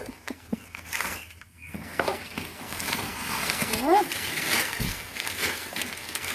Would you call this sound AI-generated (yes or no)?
yes